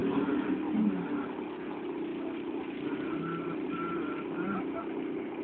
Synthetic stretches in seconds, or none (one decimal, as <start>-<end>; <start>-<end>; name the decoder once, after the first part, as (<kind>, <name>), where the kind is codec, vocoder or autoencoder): 0.0-1.7 (vocoder, BigVGAN v2); 2.1-5.4